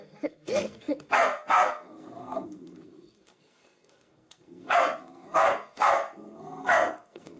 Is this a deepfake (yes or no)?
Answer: yes